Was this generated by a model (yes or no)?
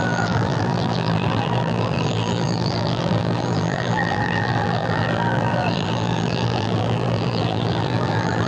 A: yes